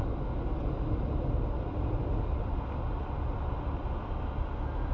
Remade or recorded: recorded